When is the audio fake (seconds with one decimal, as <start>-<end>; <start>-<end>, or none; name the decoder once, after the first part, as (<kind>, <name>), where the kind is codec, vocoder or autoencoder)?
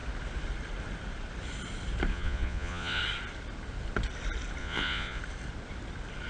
2.1-3.0 (vocoder, Vocos); 4.6-5.2